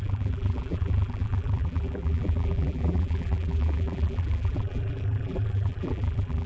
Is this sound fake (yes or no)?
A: yes